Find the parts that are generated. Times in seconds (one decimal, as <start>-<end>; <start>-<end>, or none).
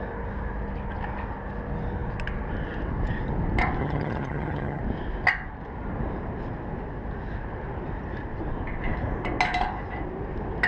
3.8-4.8